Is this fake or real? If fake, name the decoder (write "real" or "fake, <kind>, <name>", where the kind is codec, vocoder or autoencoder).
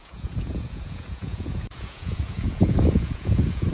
fake, vocoder, Vocos